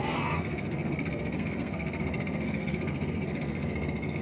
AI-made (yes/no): yes